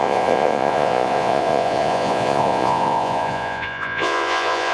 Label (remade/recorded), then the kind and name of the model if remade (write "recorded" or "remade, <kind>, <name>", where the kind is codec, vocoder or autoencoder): remade, vocoder, Vocos